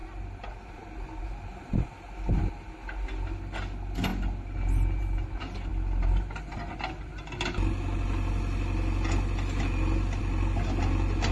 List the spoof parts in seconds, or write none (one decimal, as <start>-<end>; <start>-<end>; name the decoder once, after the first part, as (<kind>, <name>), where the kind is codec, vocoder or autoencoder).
none